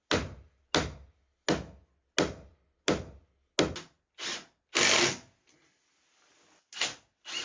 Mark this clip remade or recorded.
recorded